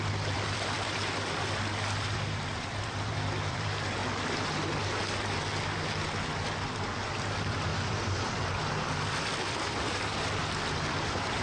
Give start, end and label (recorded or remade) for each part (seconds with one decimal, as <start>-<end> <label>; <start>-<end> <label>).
0.0-4.0 remade; 4.0-7.1 recorded; 7.1-11.4 remade